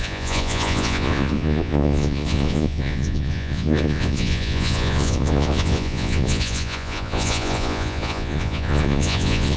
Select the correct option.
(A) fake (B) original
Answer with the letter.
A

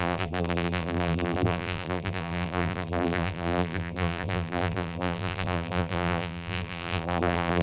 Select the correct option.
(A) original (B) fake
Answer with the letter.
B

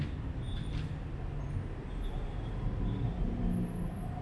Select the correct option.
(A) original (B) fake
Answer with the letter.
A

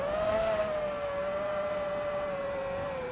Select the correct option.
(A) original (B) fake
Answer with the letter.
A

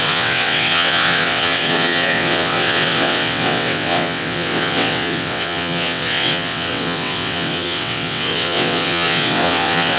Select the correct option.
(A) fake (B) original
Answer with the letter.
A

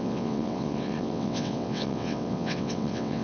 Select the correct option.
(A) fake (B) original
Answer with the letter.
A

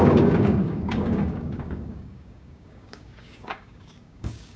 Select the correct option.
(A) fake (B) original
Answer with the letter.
A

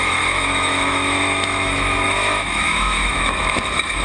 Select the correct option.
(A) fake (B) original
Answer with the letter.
A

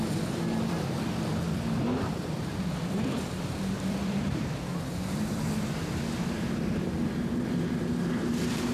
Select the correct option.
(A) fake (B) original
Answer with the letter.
A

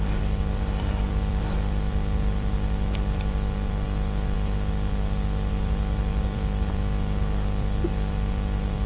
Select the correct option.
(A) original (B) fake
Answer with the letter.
B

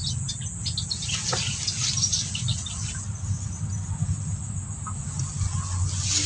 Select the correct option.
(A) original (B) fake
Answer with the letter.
A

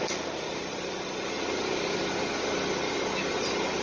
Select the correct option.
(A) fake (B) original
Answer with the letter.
B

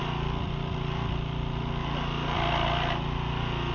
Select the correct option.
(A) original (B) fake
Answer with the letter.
A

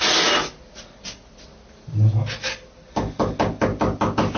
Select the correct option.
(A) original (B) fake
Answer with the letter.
A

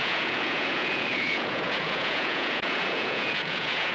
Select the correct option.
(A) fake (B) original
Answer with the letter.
A